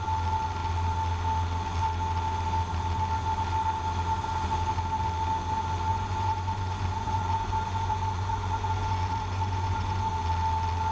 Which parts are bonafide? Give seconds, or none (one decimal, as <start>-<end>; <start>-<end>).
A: 0.0-5.9; 10.1-10.9